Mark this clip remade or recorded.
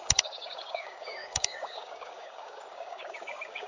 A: remade